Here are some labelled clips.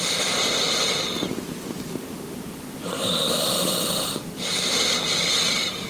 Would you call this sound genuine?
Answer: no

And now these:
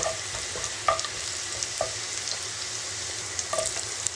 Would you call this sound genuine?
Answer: yes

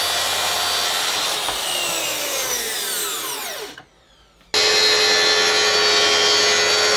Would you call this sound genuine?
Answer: yes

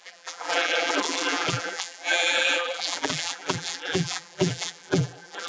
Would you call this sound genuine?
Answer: no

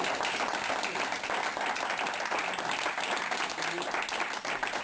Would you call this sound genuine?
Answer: yes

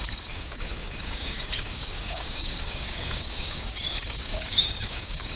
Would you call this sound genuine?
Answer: no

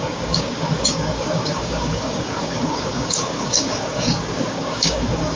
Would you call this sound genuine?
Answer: no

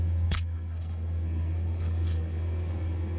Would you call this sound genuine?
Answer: no